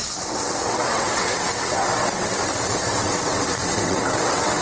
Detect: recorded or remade remade